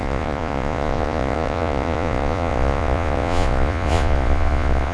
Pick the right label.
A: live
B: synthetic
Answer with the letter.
B